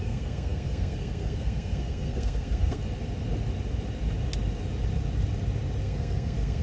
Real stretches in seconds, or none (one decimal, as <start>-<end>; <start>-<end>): 2.8-5.8